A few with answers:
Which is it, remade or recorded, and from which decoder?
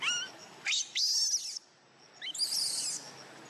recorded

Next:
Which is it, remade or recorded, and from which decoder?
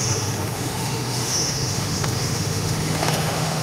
remade, autoencoder, DAC-VAE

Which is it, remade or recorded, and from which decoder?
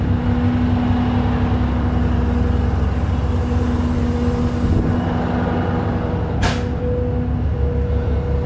recorded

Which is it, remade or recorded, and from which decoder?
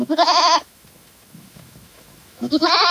remade, autoencoder, DAC-VAE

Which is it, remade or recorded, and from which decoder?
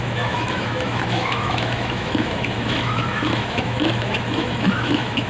remade, autoencoder, DAC-VAE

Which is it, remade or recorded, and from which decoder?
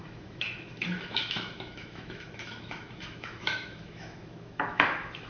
remade, autoencoder, DAC-VAE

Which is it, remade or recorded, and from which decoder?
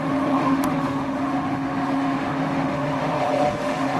remade, autoencoder, DAC-VAE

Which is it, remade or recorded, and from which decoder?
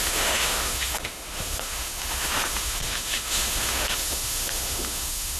remade, autoencoder, DAC-VAE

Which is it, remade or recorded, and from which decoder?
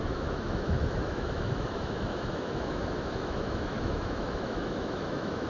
remade, autoencoder, DAC-VAE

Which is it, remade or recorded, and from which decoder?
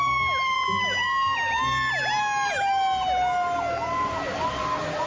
recorded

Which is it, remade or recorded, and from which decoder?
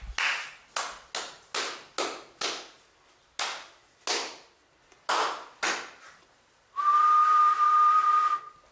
recorded